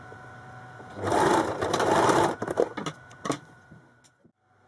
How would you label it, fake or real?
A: real